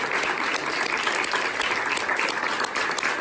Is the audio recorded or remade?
recorded